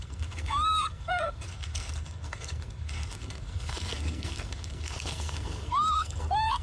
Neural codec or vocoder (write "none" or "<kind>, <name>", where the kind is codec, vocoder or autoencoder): codec, SNAC